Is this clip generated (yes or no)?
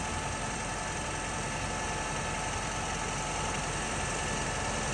no